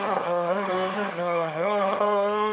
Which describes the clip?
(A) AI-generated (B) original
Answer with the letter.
A